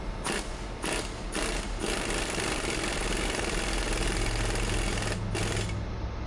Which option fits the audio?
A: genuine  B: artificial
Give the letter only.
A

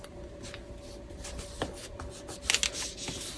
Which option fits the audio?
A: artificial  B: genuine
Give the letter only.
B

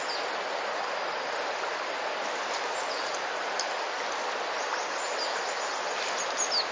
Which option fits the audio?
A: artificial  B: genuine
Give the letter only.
B